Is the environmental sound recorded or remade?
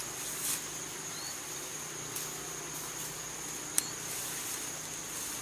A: recorded